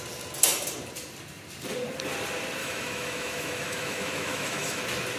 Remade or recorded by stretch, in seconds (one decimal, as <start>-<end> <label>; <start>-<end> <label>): 0.0-2.6 recorded; 2.6-4.8 remade; 4.8-5.2 recorded